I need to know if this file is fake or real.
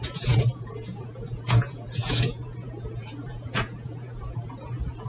fake